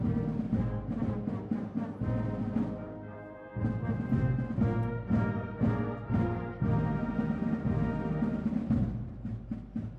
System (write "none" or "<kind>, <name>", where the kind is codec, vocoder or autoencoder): none